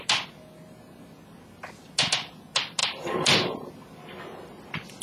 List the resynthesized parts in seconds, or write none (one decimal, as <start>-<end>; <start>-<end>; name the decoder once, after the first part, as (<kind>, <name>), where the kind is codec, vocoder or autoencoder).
2.8-3.7 (vocoder, BigVGAN v2)